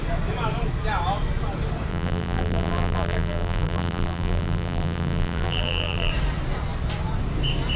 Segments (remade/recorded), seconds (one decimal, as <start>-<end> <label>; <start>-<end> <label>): 0.0-1.9 recorded; 1.9-6.1 remade; 6.1-7.8 recorded